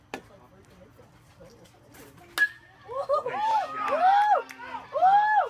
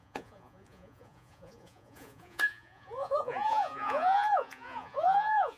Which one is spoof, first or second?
second